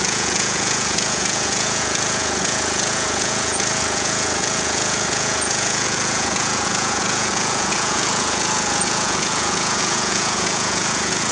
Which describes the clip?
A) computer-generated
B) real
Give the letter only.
A